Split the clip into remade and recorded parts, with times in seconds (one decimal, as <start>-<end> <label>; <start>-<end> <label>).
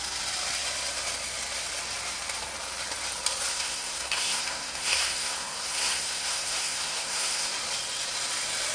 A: 0.0-3.5 recorded; 3.5-7.5 remade; 7.5-8.7 recorded